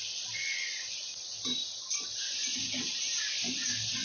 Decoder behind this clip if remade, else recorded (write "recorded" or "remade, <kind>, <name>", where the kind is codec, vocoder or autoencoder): recorded